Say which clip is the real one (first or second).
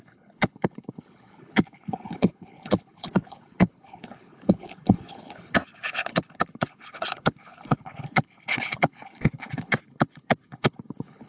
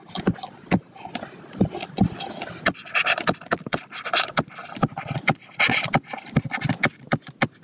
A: second